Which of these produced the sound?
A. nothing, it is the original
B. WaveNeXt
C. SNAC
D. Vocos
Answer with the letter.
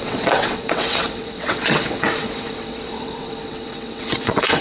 B